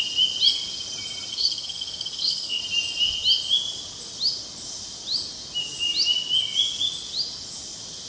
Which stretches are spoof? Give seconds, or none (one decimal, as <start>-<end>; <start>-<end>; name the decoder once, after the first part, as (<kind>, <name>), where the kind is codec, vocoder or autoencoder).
1.3-2.6 (codec, SNAC)